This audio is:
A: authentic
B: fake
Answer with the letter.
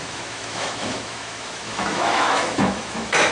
B